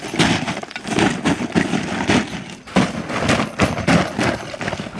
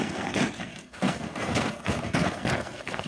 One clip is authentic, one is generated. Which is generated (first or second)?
second